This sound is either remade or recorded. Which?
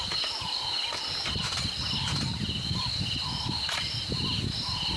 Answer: recorded